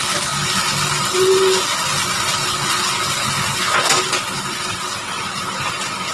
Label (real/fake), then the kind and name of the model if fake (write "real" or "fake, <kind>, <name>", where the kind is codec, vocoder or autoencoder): real